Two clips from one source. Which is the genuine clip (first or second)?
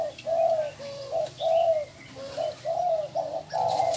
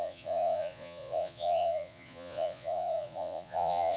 first